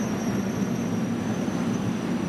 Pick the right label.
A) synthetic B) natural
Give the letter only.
B